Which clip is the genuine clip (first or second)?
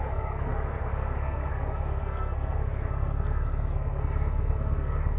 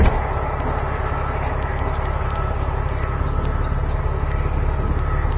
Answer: second